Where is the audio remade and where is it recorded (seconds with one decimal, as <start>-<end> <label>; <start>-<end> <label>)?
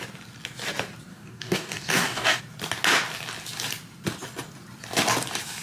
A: 0.0-1.1 recorded; 1.1-2.4 remade; 2.4-5.6 recorded